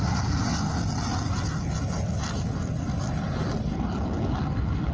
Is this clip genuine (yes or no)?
yes